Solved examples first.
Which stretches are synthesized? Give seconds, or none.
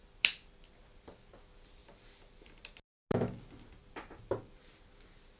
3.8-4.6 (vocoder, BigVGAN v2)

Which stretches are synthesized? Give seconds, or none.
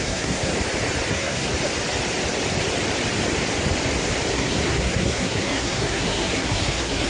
0.0-0.5 (codec, SNAC); 1.1-1.5; 4.3-7.1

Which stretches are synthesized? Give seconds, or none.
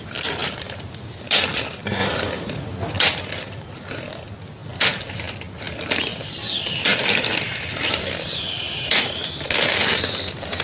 none